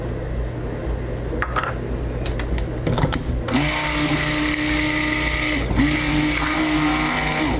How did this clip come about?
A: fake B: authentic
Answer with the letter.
B